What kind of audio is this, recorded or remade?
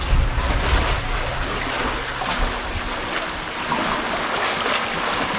recorded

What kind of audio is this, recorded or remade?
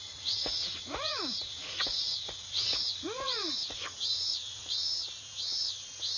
remade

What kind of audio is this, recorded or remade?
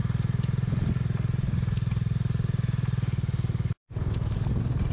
recorded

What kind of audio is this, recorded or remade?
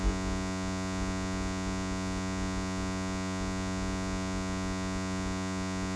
remade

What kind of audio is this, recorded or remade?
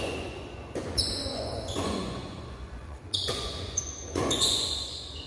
remade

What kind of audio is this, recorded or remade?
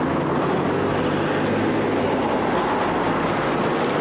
recorded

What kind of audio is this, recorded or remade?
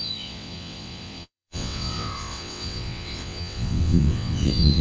remade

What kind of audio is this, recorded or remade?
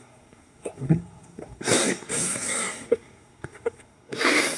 remade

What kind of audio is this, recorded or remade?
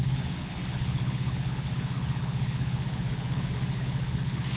remade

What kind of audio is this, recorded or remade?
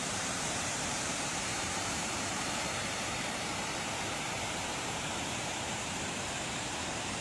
remade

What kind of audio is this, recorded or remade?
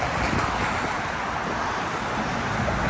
recorded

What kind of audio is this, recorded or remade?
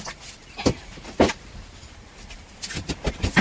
recorded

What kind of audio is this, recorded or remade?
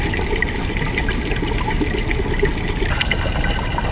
recorded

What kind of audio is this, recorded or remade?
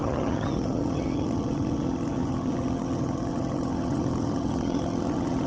remade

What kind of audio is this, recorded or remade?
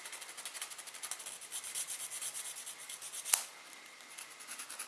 recorded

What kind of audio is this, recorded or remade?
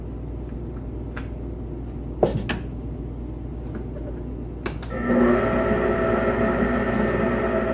recorded